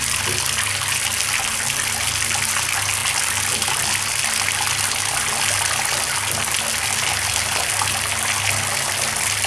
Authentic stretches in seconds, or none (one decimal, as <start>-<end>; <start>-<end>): 0.0-9.5